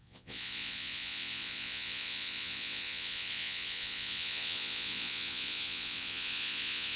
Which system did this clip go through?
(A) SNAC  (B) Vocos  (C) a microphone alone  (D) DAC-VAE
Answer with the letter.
B